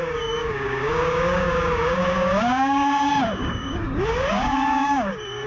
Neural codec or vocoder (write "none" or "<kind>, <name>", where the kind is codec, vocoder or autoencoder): codec, DAC